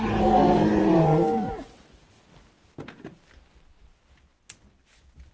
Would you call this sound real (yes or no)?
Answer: yes